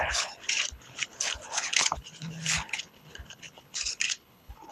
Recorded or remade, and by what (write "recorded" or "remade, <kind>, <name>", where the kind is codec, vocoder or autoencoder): remade, codec, HILCodec